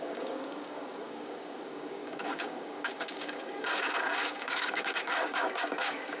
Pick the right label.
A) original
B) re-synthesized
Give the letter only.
B